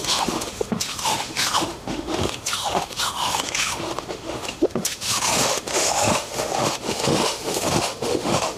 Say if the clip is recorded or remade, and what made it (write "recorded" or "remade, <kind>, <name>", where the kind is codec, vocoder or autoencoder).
remade, autoencoder, DAC-VAE